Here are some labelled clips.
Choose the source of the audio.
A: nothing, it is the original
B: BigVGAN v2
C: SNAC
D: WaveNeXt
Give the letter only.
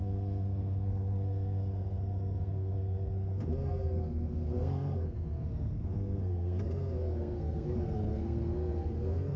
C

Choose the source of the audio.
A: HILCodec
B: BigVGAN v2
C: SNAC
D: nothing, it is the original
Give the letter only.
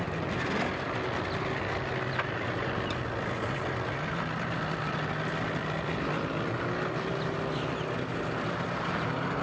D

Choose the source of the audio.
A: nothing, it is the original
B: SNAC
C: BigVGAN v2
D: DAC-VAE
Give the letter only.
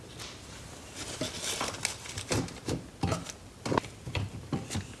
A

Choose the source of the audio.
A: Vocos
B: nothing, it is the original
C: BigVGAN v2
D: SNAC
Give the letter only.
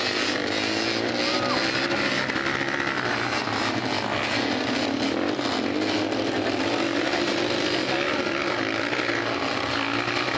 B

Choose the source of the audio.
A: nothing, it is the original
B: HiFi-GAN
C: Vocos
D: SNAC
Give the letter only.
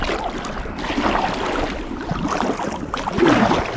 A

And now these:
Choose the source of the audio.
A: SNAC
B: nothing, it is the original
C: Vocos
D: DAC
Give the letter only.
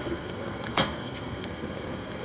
A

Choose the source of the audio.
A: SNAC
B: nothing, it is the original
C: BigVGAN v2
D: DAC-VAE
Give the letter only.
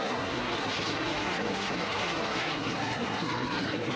A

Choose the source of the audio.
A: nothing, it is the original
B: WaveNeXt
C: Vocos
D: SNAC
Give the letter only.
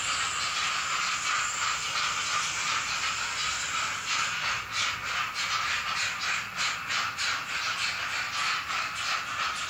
A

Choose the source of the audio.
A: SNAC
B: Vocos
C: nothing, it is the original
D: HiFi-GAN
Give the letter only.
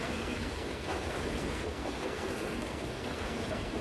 A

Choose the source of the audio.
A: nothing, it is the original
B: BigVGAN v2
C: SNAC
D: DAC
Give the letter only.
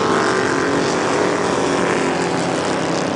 A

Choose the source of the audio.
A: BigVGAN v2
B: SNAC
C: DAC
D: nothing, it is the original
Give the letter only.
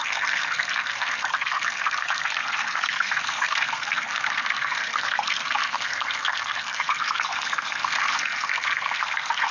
B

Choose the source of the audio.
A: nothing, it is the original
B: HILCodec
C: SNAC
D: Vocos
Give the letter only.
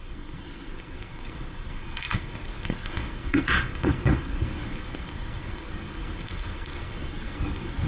C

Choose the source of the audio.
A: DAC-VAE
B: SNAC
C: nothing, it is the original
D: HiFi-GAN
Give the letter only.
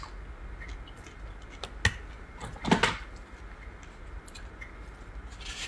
C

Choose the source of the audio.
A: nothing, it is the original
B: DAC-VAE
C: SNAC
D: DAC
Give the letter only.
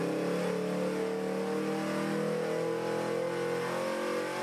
A